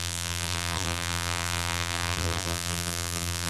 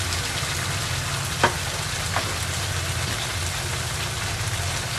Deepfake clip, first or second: first